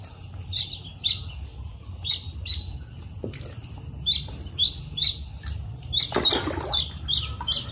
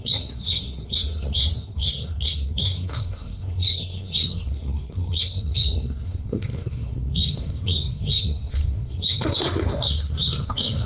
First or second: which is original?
first